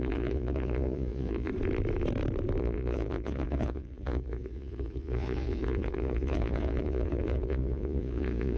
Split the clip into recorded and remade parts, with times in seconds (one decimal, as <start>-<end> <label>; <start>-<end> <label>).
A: 0.0-1.5 remade; 1.5-2.6 recorded; 2.6-8.6 remade